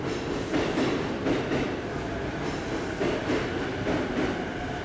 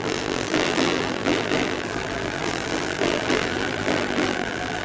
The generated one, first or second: second